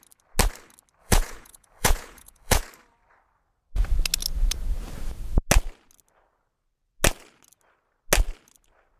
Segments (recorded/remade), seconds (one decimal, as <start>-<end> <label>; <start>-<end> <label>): 0.0-1.0 recorded; 1.0-2.6 remade; 2.6-9.0 recorded